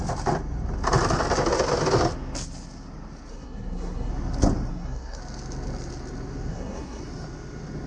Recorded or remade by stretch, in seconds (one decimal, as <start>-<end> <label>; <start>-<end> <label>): 0.0-3.3 recorded; 3.3-4.1 remade; 4.1-4.7 recorded; 4.7-5.2 remade; 5.2-6.5 recorded; 6.5-7.0 remade; 7.0-7.9 recorded